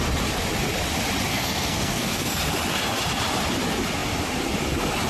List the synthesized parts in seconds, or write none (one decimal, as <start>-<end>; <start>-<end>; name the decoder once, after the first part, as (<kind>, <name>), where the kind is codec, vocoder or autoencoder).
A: 1.3-2.4 (codec, SNAC)